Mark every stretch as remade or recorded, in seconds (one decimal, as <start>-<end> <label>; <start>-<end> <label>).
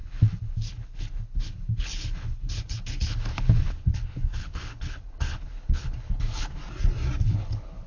0.0-6.6 remade; 6.6-7.2 recorded; 7.2-7.9 remade